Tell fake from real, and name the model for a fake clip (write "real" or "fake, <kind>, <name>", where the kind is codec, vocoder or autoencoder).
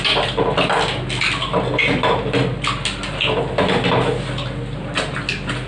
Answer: real